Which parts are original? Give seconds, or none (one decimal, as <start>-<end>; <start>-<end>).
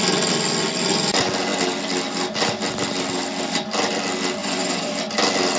0.0-4.4; 4.9-5.6